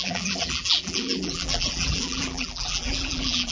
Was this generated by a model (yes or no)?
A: yes